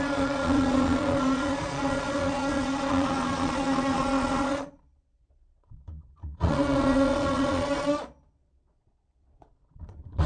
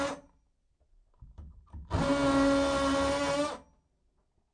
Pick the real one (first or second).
second